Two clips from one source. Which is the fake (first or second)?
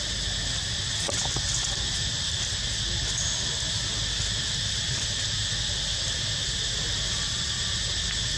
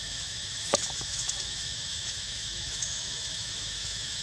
second